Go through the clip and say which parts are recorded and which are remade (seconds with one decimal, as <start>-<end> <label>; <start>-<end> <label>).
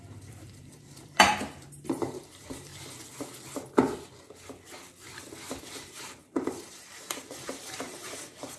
0.0-2.7 remade; 2.7-5.6 recorded; 5.6-8.6 remade